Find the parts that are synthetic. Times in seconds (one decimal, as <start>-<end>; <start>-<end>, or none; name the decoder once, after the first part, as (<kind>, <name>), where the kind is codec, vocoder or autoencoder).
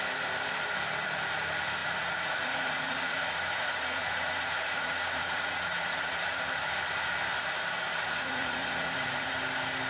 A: 1.8-6.4 (vocoder, Vocos); 7.9-9.3